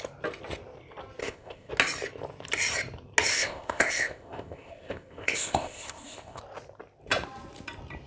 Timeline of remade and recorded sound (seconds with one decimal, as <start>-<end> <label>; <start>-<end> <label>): 0.0-1.2 recorded; 1.2-1.7 remade; 1.7-3.3 recorded; 3.3-6.4 remade; 6.4-8.1 recorded